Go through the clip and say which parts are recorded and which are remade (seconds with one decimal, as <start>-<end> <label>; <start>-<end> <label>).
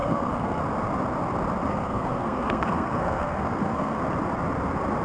0.0-0.6 remade; 0.6-1.7 recorded; 1.7-4.0 remade; 4.0-5.0 recorded